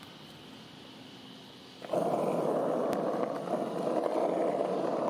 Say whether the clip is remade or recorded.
recorded